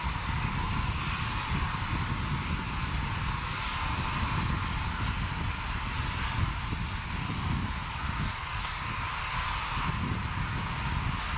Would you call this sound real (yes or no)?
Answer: yes